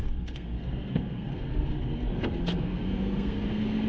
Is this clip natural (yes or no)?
no